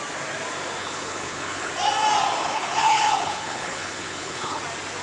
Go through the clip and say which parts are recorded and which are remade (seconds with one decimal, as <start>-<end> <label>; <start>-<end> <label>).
0.0-0.8 recorded; 0.8-1.7 remade; 1.7-2.4 recorded; 2.4-4.6 remade; 4.6-5.0 recorded